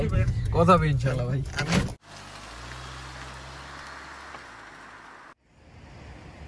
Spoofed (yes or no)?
no